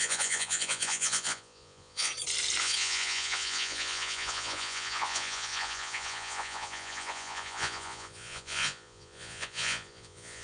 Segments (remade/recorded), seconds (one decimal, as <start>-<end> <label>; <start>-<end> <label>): 0.0-2.1 remade; 2.1-2.6 recorded; 2.6-10.4 remade